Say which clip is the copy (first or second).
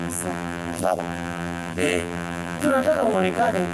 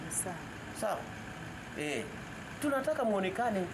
first